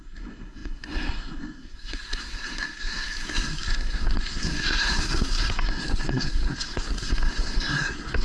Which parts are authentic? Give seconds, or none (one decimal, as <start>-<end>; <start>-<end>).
none